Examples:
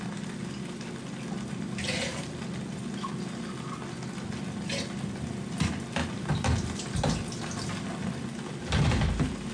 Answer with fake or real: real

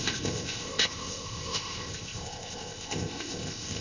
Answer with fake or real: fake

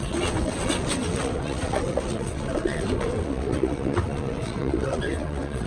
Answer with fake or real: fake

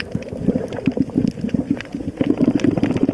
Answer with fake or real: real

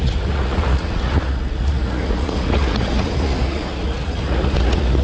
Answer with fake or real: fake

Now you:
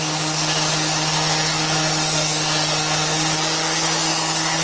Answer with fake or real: real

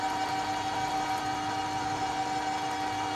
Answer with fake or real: real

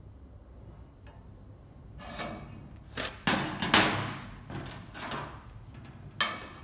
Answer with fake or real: real